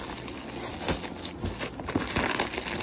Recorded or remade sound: recorded